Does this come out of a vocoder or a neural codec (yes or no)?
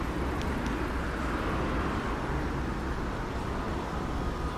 no